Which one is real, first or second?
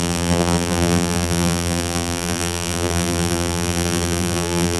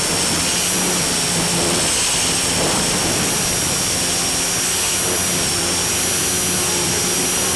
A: second